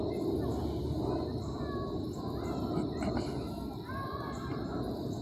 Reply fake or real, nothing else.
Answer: real